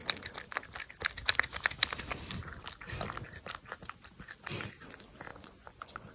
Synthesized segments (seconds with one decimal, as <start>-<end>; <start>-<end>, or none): 5.3-6.1